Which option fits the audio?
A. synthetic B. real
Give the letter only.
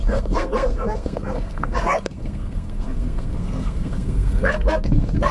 A